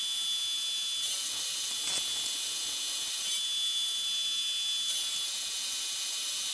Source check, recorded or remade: recorded